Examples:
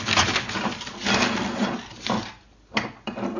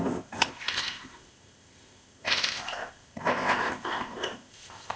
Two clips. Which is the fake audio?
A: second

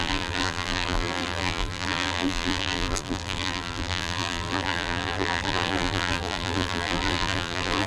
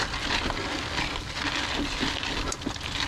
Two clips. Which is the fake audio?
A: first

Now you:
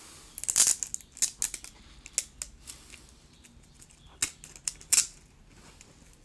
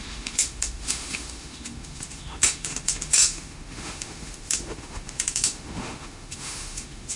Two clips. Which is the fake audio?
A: second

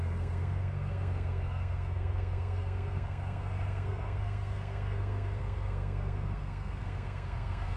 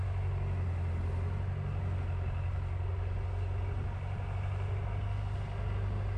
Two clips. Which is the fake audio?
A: first